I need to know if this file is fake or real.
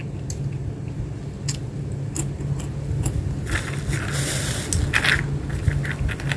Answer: real